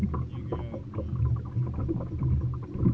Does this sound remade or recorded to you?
recorded